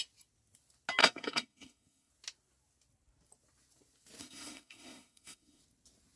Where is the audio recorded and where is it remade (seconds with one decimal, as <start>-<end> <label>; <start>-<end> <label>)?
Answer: 0.0-1.0 recorded; 1.0-2.1 remade; 2.1-4.2 recorded; 4.2-5.6 remade; 5.6-6.2 recorded